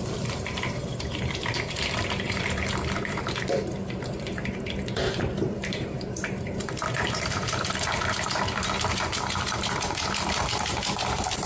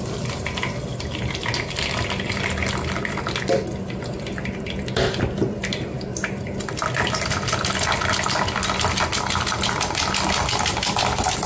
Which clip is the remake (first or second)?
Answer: first